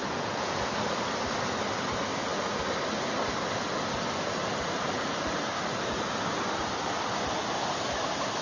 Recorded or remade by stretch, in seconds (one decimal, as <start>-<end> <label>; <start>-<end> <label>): 0.0-0.7 remade; 0.7-8.4 recorded